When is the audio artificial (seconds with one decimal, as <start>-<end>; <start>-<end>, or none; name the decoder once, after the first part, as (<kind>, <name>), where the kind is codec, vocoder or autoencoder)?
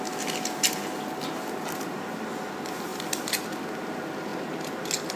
none